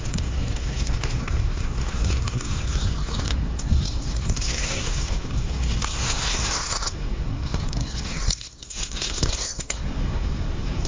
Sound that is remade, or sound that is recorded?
remade